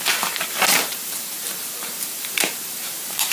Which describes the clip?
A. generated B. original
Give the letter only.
A